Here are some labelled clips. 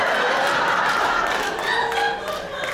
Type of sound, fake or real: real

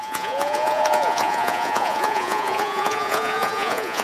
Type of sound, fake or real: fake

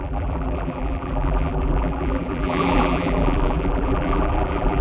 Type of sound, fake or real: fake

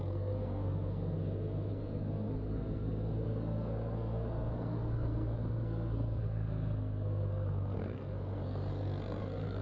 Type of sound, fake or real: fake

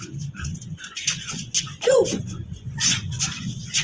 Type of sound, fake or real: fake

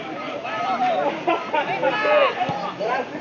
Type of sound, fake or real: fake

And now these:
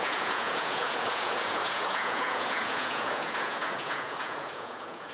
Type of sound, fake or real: fake